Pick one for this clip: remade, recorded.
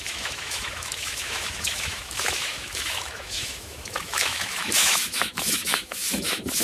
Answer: remade